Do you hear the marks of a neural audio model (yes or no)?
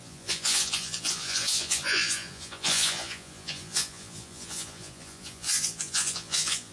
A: yes